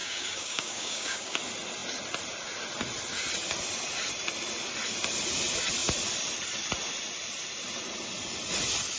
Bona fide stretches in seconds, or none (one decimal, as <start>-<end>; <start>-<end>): 1.4-9.0